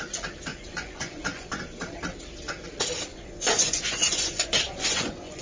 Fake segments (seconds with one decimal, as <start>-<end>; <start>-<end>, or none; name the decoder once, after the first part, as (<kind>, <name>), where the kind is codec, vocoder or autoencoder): 0.5-1.8 (vocoder, Vocos); 3.1-5.4